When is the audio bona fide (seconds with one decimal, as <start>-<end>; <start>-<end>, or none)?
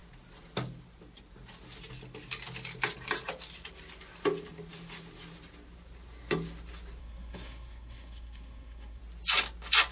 0.0-7.0; 9.0-9.9